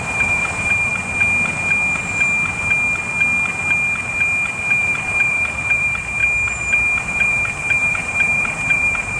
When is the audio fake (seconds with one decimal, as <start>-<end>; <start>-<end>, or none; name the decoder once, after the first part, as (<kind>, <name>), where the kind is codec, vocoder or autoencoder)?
0.0-0.9 (vocoder, BigVGAN v2); 4.8-6.2; 7.0-9.2